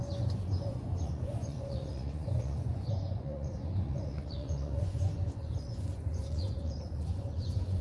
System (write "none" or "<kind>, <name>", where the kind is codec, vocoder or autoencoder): vocoder, Vocos